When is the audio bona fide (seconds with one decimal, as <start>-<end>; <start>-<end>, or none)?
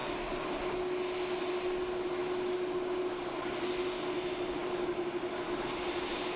0.0-6.4